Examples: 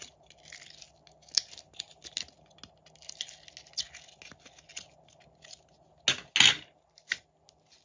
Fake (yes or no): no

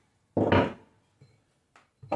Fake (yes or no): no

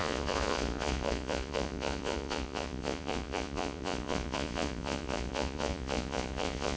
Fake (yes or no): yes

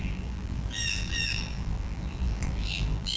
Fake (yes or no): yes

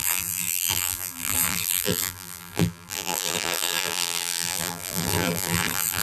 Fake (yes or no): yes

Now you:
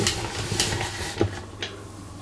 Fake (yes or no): no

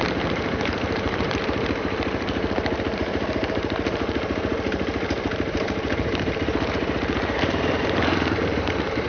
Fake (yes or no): yes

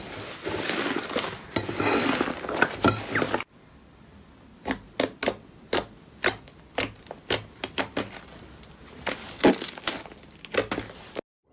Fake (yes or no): no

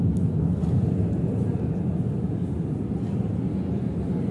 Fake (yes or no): no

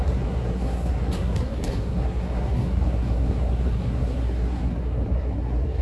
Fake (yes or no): yes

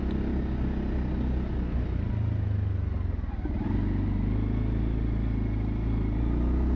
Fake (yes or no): no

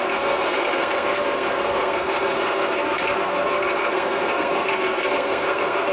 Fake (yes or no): yes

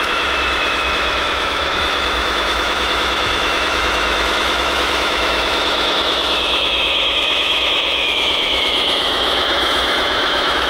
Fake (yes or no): yes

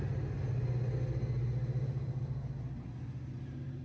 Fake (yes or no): no